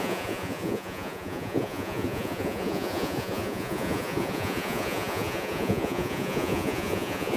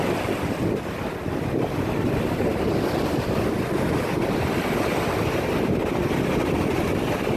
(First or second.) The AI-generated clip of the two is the first